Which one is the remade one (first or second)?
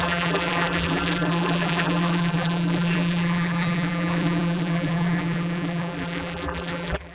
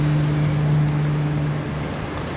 first